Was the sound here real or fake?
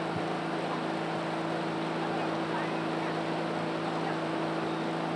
real